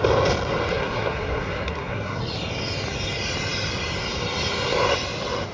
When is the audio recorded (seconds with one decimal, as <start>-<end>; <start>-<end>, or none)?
0.0-0.7; 2.2-5.5

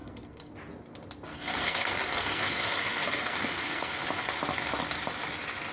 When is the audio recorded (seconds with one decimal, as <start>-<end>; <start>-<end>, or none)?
0.5-1.3; 4.0-5.7

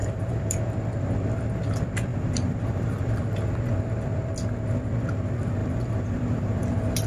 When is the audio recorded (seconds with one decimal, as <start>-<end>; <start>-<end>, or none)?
0.7-2.1; 3.1-5.6